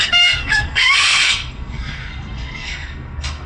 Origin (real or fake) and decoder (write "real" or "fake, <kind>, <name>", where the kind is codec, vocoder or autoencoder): fake, codec, SNAC